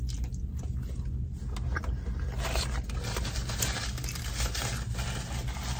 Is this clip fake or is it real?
real